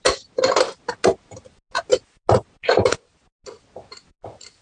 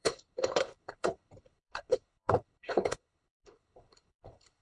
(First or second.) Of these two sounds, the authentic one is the first